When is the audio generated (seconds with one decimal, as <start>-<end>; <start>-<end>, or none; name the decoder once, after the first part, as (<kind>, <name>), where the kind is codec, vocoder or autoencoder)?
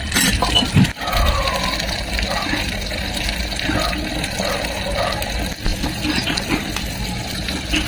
none